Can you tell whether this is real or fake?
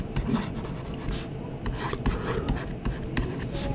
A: fake